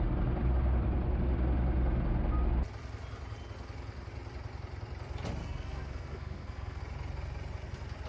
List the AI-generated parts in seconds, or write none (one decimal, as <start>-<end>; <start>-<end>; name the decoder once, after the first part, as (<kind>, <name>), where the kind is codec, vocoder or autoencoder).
5.4-6.8 (codec, SNAC)